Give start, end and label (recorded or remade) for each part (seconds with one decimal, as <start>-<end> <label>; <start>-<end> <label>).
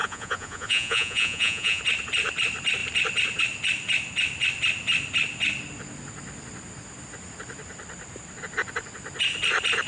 0.0-1.8 remade; 1.8-9.9 recorded